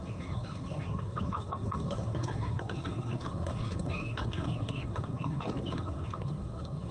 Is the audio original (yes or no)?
no